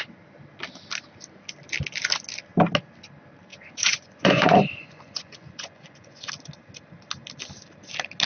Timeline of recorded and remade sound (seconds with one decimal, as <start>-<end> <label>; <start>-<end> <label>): 0.0-3.5 recorded; 3.5-6.3 remade; 6.3-8.3 recorded